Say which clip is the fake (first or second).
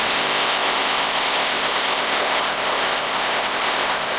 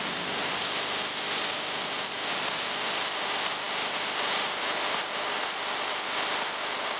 first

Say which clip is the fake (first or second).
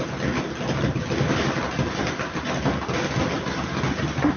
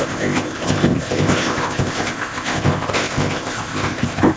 second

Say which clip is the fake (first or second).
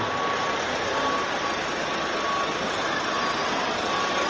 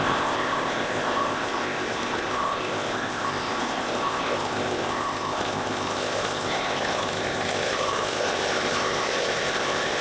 second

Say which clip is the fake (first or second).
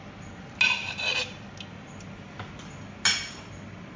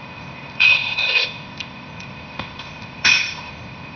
second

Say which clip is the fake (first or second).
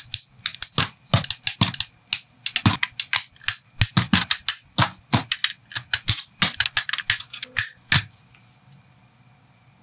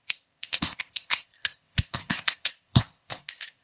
second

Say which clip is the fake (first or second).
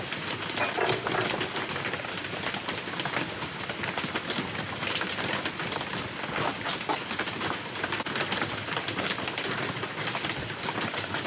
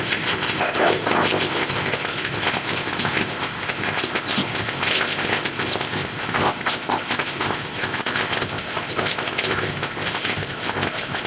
second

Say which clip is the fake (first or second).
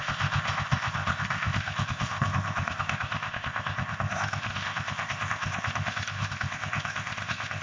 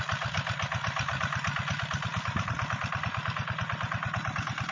first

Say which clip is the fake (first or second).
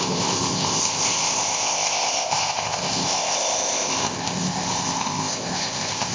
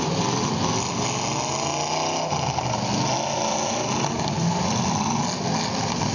first